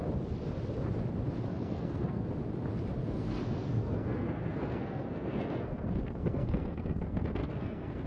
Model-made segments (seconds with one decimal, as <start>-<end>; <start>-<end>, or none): 1.5-2.3; 3.0-8.1